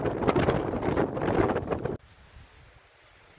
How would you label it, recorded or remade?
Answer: recorded